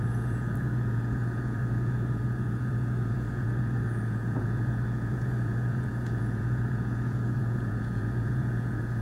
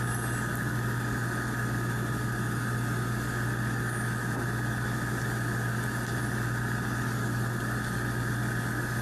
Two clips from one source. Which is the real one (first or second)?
second